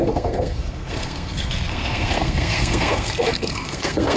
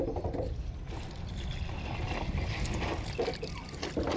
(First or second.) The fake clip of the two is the first